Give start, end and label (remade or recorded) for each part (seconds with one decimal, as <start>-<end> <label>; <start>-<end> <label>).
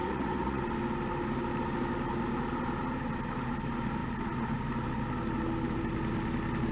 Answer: 0.0-0.6 remade; 0.6-6.7 recorded